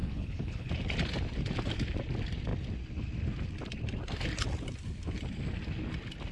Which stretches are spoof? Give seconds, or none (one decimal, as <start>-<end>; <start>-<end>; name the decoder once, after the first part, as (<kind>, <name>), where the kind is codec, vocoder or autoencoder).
0.0-0.7 (codec, HILCodec)